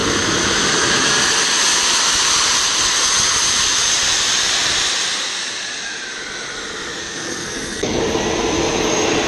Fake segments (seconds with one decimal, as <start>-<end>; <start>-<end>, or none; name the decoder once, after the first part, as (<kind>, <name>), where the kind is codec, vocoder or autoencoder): 7.0-8.0 (codec, SNAC)